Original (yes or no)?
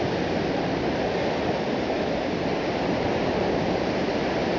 no